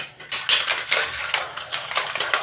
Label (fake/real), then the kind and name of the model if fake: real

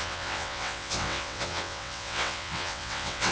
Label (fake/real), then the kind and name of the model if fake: fake, vocoder, WaveNeXt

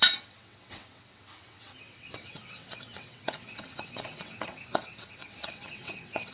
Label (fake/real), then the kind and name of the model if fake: fake, vocoder, WaveNeXt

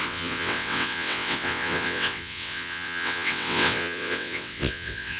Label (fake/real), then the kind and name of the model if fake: fake, vocoder, WaveNeXt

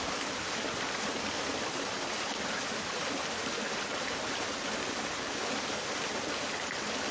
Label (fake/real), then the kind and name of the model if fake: real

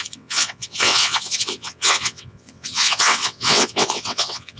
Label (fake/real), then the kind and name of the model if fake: fake, vocoder, WaveNeXt